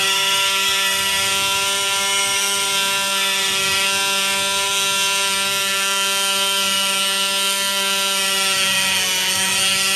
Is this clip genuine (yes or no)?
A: no